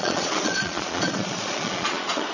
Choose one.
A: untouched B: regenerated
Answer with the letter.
B